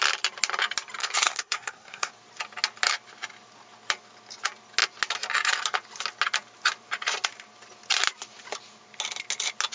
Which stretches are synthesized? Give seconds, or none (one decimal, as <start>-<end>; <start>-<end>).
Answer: 1.0-2.1